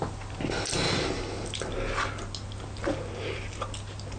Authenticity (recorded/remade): recorded